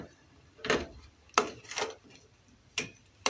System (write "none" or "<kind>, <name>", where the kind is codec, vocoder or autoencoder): vocoder, BigVGAN v2